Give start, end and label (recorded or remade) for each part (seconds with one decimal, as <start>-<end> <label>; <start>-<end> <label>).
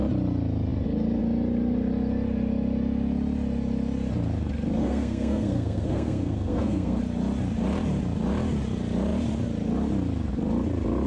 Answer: 0.0-4.8 recorded; 4.8-7.0 remade; 7.0-11.1 recorded